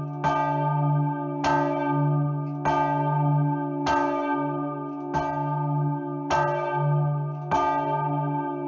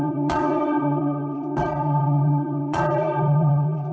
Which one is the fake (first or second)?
second